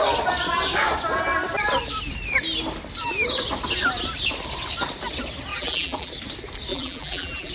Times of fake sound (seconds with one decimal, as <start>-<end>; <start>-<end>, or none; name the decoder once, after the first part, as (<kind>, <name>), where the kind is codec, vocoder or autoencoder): 5.5-6.1 (vocoder, BigVGAN v2); 6.7-7.5

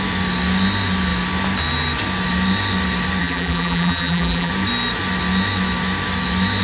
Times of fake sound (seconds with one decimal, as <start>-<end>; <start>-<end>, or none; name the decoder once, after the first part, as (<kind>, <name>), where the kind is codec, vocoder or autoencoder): 3.2-4.5 (vocoder, BigVGAN v2)